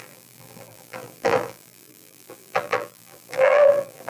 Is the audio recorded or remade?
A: remade